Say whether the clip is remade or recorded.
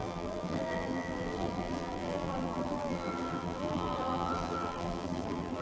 remade